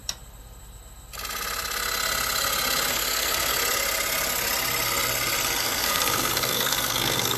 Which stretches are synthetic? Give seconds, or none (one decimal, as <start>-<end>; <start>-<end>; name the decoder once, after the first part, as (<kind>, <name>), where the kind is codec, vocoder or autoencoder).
2.9-3.5 (codec, SNAC); 5.6-7.4